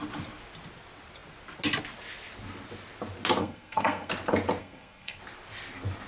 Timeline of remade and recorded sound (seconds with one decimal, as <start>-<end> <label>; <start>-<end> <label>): 0.0-3.4 recorded; 3.4-4.1 remade; 4.1-4.6 recorded; 4.6-5.2 remade; 5.2-6.1 recorded